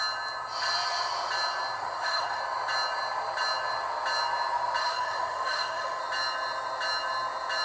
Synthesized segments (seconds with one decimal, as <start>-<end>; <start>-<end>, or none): 1.8-2.4; 4.8-6.0